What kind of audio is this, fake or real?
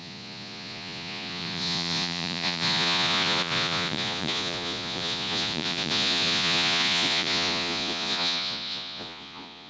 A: fake